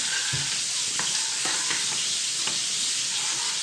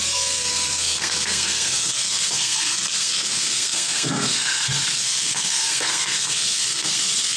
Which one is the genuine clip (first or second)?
first